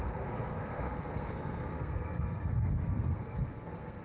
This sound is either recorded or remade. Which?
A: remade